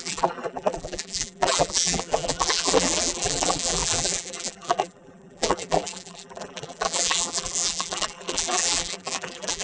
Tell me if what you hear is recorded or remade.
remade